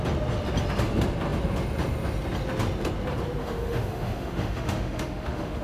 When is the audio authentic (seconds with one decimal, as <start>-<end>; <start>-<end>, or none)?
0.0-3.4